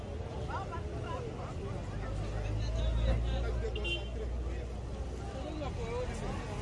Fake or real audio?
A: real